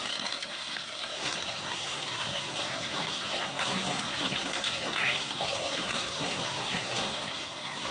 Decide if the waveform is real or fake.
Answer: fake